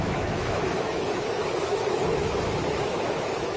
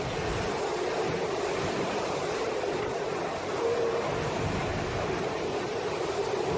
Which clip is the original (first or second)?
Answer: second